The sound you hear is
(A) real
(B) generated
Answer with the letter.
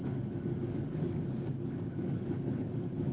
B